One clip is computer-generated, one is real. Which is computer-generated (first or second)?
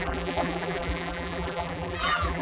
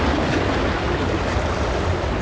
first